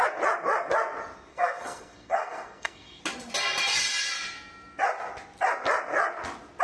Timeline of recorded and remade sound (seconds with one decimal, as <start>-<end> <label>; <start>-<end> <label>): 0.0-1.3 recorded; 1.3-3.0 remade; 3.0-6.6 recorded